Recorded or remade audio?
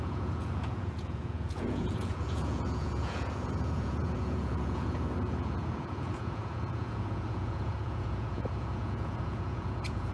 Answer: remade